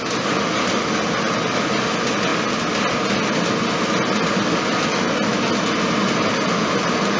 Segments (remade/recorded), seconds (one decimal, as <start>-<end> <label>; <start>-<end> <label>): 0.0-7.2 recorded